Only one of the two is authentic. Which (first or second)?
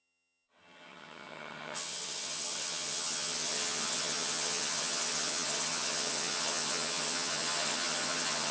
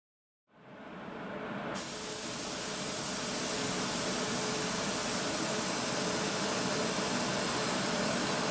second